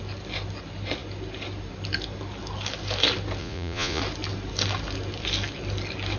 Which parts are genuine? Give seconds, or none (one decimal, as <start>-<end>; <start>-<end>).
0.0-3.4; 4.0-6.2